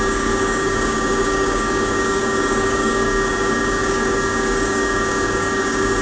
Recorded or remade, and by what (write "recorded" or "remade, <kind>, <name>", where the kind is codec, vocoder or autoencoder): remade, codec, DAC